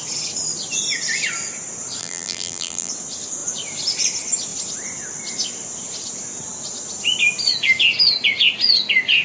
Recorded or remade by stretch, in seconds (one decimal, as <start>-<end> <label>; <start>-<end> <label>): 0.0-2.0 recorded; 2.0-2.9 remade; 2.9-9.2 recorded